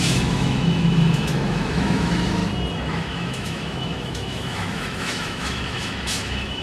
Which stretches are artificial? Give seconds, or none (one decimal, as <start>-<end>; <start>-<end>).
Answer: 0.0-2.4; 2.9-6.6